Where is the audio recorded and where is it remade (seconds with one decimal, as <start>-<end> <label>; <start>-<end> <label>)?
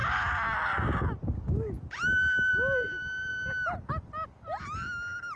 0.0-5.4 recorded